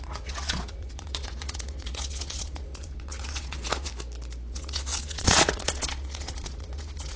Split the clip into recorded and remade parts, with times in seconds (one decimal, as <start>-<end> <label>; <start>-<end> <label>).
0.0-3.9 remade; 3.9-4.5 recorded; 4.5-7.2 remade